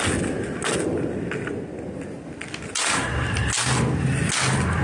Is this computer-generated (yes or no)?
no